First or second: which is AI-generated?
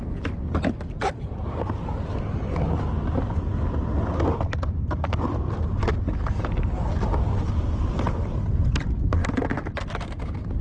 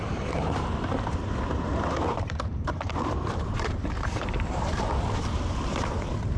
second